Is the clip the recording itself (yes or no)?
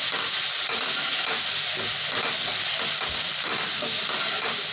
yes